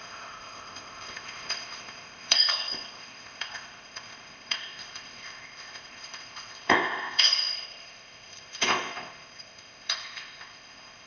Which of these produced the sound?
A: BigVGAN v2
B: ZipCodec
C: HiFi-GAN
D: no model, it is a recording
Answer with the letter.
B